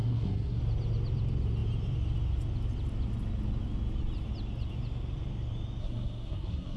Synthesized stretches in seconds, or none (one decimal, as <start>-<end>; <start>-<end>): 0.0-0.6; 5.8-6.8